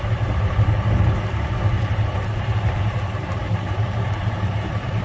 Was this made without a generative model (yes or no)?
no